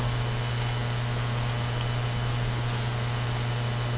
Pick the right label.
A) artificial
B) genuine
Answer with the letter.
B